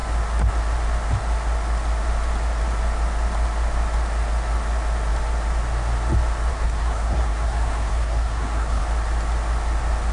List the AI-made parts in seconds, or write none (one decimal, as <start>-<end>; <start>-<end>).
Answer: 6.5-8.8